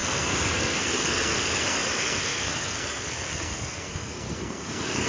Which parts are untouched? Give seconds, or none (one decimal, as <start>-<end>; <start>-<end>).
none

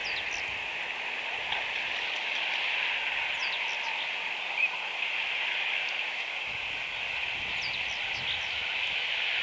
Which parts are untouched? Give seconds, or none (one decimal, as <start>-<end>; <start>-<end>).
0.0-9.4

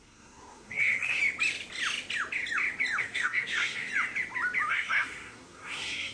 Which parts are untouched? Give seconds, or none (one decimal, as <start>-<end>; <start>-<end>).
1.2-3.0; 3.9-4.7

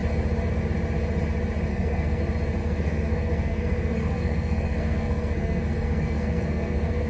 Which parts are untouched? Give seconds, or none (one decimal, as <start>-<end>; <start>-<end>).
0.0-1.7; 2.2-2.6

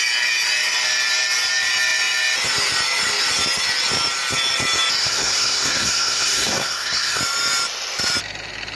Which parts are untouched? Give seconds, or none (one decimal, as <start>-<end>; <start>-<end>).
0.0-5.0; 7.2-8.8

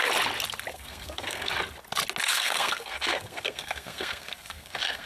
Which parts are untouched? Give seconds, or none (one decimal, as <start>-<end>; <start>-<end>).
0.0-0.7; 1.5-2.3